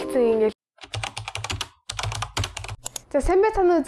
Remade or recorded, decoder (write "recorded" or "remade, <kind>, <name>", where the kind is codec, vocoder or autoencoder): recorded